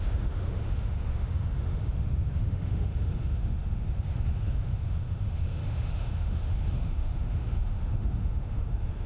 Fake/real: fake